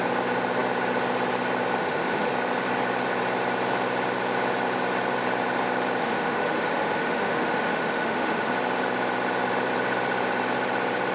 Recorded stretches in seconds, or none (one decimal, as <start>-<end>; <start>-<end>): 0.0-1.8; 2.3-6.0; 8.5-11.1